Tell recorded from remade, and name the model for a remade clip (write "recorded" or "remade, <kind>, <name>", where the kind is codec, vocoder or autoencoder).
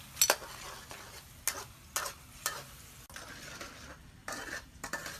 recorded